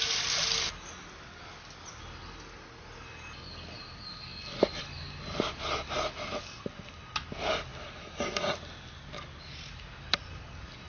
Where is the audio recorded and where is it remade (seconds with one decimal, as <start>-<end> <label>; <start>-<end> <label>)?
0.0-10.9 recorded